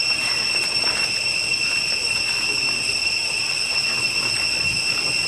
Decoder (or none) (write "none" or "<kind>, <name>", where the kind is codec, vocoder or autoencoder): vocoder, BigVGAN v2